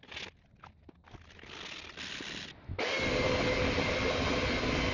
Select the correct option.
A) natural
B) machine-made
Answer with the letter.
A